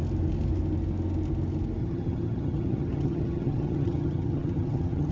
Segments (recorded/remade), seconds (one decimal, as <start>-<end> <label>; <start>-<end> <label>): 0.0-1.8 recorded; 1.8-5.1 remade